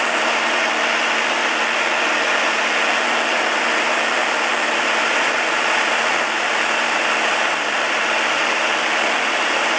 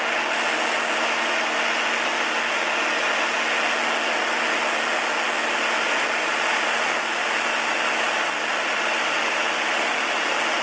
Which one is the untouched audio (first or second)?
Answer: second